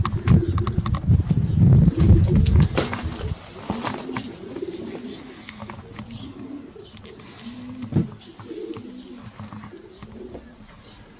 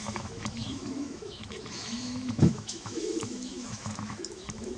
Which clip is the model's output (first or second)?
second